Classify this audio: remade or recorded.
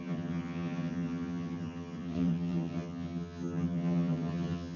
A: remade